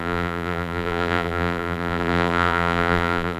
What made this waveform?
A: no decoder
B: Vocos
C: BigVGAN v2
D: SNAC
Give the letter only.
C